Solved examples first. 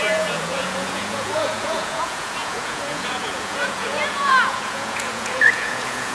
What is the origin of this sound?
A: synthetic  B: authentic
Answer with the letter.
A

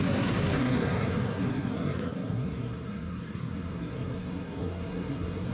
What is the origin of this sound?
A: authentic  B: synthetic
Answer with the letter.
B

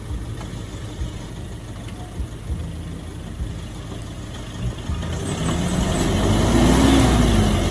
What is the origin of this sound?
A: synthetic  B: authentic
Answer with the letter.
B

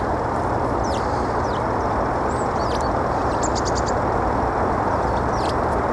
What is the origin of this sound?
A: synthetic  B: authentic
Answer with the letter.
A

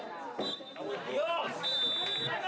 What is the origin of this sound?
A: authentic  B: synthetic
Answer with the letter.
A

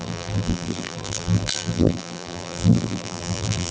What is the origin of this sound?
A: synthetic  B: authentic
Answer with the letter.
A